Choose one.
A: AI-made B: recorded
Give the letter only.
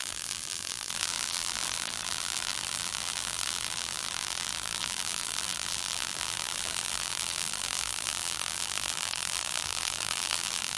A